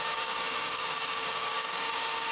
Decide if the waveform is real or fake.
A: fake